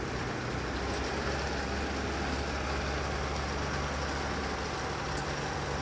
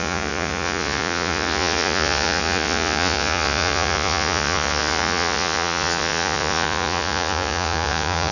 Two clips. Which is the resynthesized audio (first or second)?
second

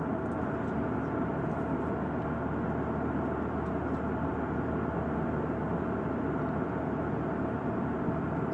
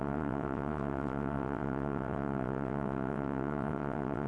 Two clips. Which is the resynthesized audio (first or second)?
second